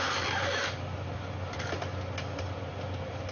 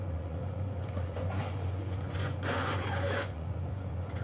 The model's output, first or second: second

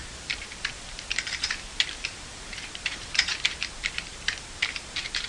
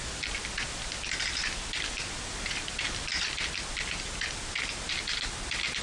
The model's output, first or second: first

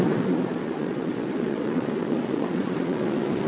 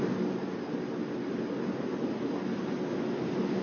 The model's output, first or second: first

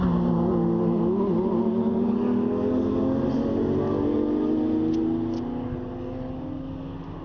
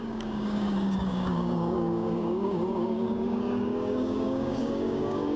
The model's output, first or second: second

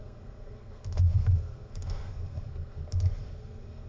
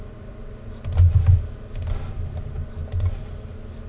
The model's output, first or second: first